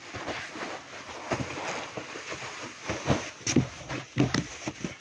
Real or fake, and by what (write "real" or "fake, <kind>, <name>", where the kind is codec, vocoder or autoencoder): real